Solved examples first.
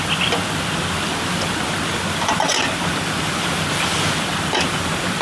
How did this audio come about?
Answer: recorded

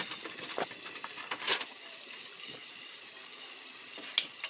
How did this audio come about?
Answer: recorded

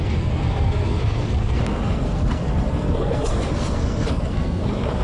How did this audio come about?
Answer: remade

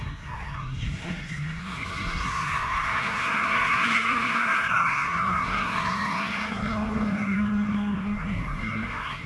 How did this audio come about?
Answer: remade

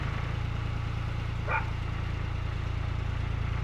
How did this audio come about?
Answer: recorded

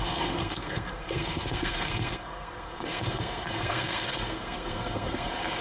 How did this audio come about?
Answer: remade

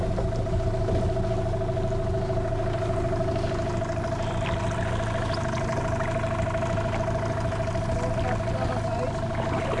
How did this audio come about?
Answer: recorded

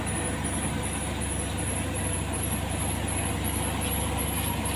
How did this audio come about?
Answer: recorded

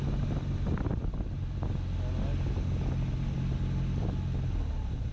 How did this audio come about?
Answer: recorded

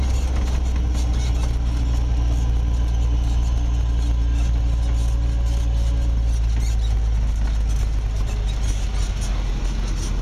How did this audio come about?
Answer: recorded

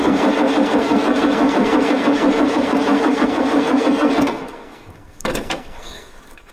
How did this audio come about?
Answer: remade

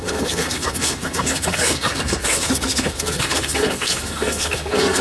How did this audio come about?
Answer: remade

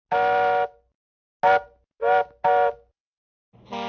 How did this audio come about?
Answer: recorded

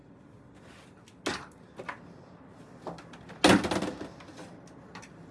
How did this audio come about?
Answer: recorded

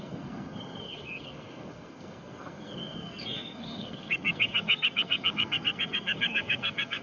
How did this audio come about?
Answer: remade